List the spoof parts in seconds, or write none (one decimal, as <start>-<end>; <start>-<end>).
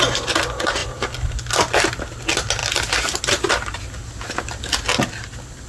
none